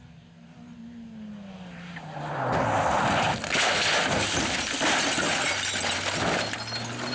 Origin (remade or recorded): recorded